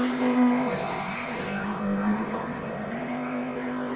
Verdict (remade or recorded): remade